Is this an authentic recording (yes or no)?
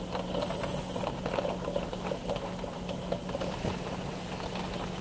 yes